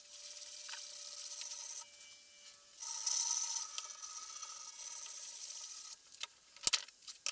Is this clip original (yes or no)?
yes